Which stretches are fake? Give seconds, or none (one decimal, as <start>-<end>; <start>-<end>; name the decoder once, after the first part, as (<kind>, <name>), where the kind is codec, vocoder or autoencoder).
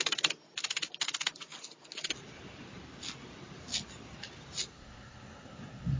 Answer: 4.7-6.0 (codec, SNAC)